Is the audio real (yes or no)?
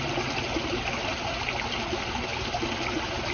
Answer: yes